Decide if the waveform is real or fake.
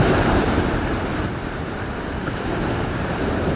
fake